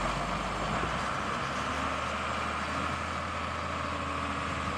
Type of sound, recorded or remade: recorded